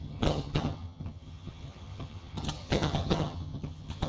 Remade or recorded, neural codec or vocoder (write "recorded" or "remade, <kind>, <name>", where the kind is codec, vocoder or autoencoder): remade, vocoder, HiFi-GAN